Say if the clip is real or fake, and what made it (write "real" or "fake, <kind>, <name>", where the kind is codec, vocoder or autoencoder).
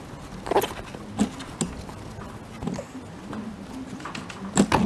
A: real